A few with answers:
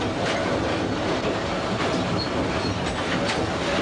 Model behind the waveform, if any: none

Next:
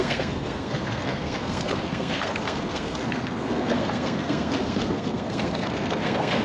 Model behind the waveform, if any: codec, SNAC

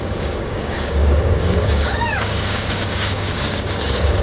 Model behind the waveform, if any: codec, DAC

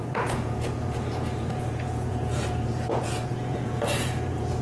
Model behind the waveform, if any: vocoder, Vocos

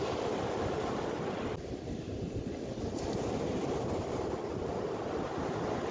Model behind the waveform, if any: none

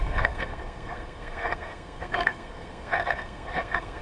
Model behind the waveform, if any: codec, SNAC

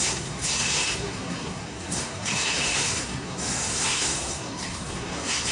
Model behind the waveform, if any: codec, SNAC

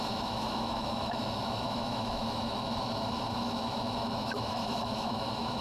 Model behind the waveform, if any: autoencoder, DAC-VAE